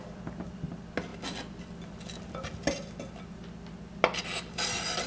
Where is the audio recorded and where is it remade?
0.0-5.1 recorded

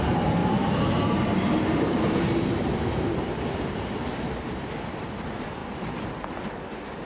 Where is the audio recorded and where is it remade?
0.0-0.4 recorded; 0.4-4.7 remade; 4.7-7.1 recorded

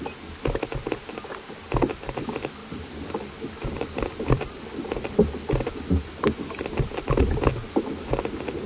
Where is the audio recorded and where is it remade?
0.0-2.6 recorded; 2.6-5.1 remade; 5.1-8.7 recorded